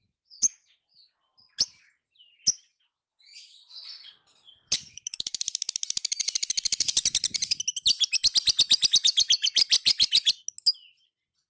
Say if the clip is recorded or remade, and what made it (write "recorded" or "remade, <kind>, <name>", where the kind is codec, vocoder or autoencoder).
recorded